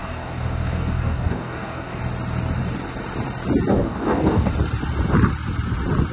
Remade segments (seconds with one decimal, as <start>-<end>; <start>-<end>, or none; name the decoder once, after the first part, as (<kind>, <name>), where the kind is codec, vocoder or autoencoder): 0.0-2.0 (codec, DAC); 3.7-4.5